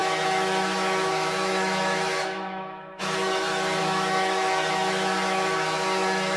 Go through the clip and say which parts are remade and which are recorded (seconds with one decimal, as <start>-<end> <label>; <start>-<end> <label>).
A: 0.0-6.4 remade